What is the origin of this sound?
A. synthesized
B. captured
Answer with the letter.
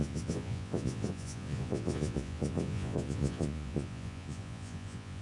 A